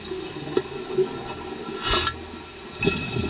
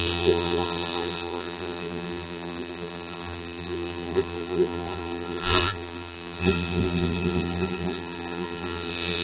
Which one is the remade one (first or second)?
second